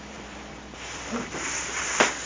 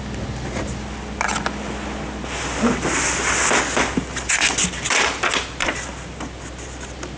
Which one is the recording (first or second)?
second